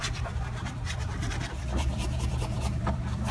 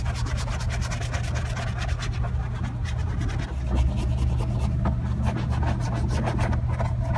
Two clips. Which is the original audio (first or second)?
second